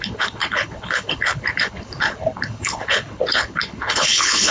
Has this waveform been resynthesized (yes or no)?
yes